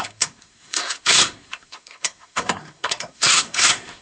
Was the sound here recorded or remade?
remade